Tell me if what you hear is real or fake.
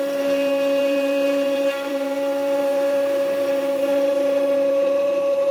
fake